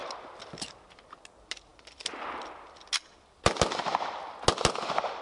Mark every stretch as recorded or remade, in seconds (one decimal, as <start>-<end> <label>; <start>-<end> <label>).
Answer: 0.0-5.2 recorded